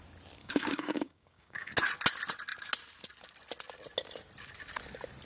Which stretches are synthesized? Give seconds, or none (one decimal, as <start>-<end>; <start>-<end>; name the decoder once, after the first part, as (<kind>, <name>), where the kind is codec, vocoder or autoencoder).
0.4-1.7 (codec, DAC)